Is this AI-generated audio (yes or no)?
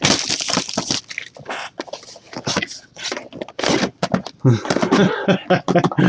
no